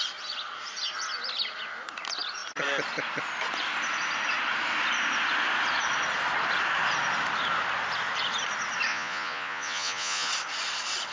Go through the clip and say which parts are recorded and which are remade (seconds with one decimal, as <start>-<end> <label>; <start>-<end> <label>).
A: 0.0-8.9 recorded; 8.9-10.3 remade; 10.3-11.1 recorded